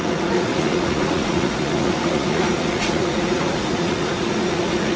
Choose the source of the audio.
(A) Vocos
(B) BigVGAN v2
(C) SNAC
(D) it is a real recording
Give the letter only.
A